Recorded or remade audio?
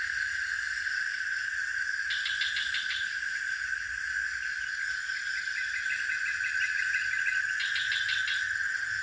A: recorded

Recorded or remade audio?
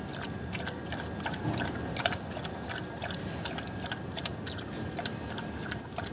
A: recorded